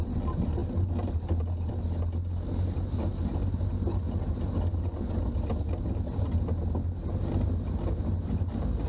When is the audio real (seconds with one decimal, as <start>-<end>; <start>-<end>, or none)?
0.0-8.9